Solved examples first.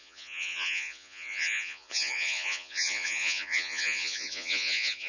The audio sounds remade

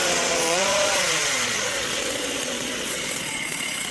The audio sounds remade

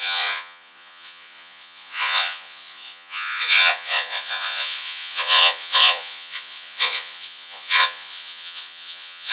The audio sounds remade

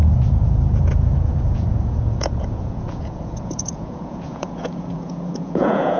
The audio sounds remade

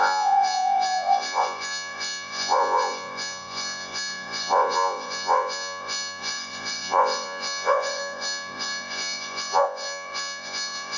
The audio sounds remade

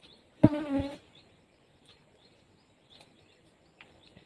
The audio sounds remade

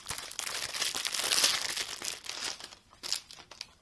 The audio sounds recorded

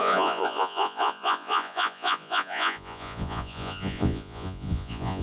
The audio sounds remade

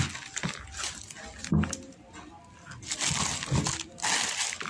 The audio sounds recorded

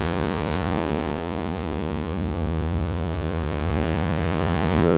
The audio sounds remade